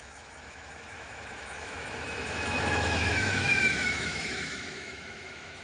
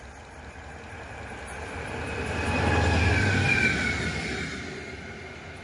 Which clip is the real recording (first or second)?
second